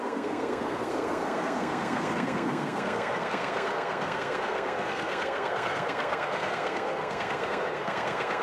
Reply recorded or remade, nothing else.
remade